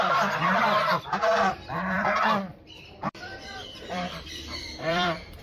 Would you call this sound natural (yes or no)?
no